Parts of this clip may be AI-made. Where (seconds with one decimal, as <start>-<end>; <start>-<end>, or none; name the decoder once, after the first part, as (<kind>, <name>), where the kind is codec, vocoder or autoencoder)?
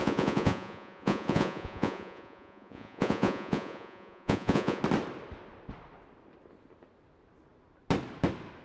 0.0-4.8 (vocoder, Vocos)